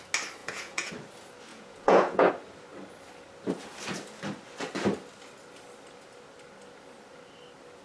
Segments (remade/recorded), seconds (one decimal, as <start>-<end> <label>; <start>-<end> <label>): 0.0-0.4 recorded; 0.4-0.9 remade; 0.9-1.5 recorded; 1.5-2.3 remade; 2.3-7.8 recorded